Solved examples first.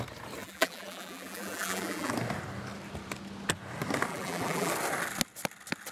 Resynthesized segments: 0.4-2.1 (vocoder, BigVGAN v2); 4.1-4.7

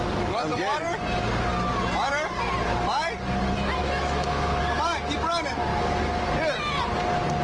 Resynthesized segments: 3.8-4.6 (autoencoder, DAC-VAE)

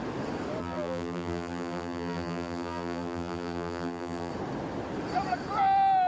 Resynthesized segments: 0.6-4.3 (vocoder, BigVGAN v2)